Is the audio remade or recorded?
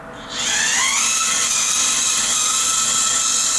recorded